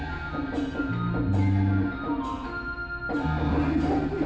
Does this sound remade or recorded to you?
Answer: recorded